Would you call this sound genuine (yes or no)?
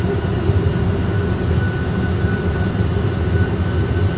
yes